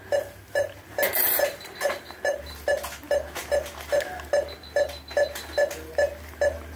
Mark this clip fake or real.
real